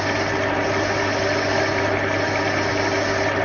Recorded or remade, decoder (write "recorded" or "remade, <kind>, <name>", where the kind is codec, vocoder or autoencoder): recorded